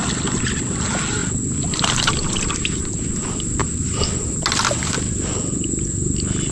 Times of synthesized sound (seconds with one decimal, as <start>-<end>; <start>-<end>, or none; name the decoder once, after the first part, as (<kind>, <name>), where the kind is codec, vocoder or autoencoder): none